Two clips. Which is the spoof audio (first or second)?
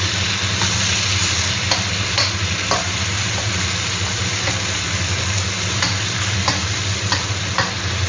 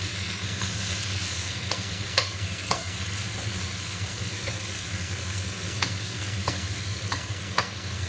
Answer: second